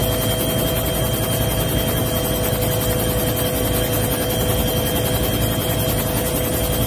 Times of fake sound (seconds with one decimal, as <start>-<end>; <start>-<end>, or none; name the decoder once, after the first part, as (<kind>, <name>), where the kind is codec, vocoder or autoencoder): none